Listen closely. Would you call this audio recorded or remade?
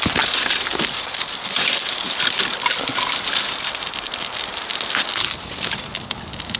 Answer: recorded